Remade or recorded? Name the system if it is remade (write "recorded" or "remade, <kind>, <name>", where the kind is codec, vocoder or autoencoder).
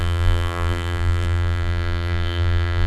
remade, vocoder, BigVGAN v2